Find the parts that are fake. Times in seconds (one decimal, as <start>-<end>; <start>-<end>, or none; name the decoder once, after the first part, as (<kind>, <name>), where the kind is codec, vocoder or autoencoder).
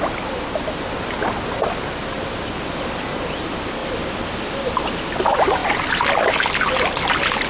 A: none